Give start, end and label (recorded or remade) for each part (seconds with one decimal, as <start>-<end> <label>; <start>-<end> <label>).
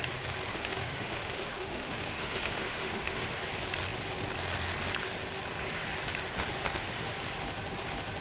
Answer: 0.0-0.5 recorded; 0.5-3.2 remade; 3.2-8.2 recorded